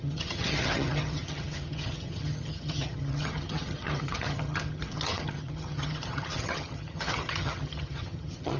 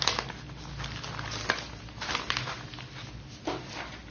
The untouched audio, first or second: second